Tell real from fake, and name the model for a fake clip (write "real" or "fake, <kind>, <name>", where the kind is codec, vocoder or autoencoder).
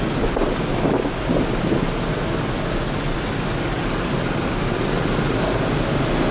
real